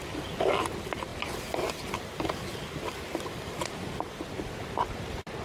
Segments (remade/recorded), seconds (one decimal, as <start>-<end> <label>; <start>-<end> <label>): 0.0-5.4 recorded